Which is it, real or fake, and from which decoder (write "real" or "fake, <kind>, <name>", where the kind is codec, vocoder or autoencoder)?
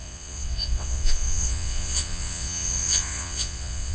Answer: fake, vocoder, WaveNeXt